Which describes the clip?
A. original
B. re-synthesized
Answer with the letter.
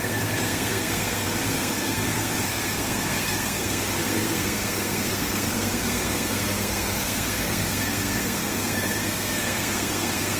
B